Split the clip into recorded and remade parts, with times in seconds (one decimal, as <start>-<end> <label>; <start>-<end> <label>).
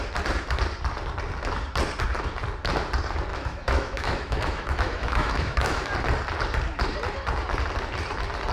0.0-3.3 recorded; 3.3-5.9 remade; 5.9-8.5 recorded